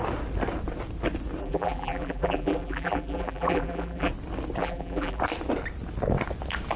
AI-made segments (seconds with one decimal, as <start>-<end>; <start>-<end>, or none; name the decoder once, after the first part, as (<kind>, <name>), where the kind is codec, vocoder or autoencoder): 1.4-4.1 (vocoder, BigVGAN v2); 4.6-5.2